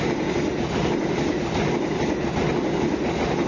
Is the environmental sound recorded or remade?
recorded